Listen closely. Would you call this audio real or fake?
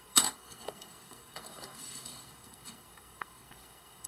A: fake